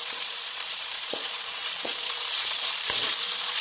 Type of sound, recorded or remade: remade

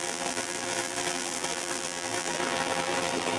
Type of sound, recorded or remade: remade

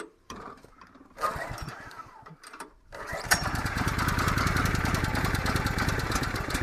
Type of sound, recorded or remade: remade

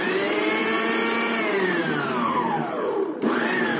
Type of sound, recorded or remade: remade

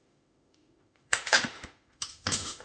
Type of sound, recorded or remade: remade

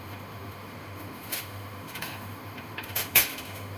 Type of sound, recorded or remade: remade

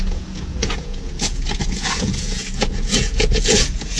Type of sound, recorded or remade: remade